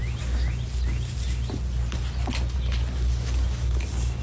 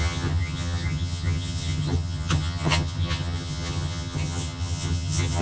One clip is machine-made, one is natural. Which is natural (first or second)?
first